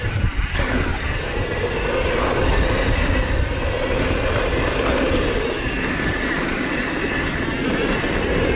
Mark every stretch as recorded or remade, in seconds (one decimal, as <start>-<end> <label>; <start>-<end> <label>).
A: 0.0-8.6 recorded